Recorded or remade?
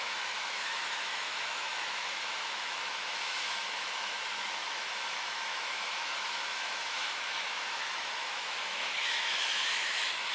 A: remade